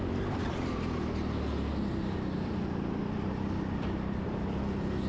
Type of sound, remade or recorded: recorded